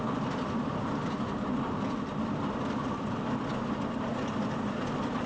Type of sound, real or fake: real